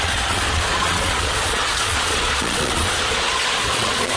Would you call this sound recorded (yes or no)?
no